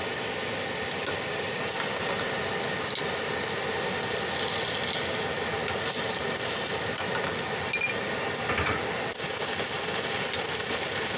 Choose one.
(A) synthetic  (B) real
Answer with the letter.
B